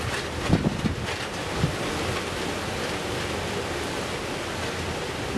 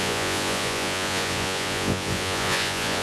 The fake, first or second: second